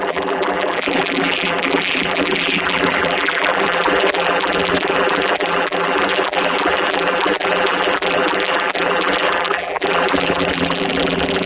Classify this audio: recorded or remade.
remade